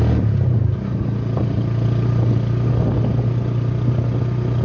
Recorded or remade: recorded